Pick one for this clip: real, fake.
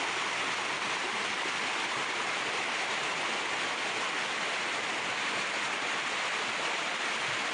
real